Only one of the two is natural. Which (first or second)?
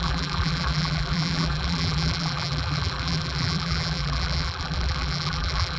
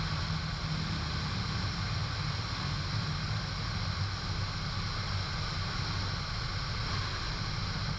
second